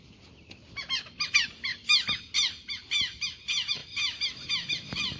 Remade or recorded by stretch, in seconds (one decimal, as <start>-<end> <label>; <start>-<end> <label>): 0.0-5.2 recorded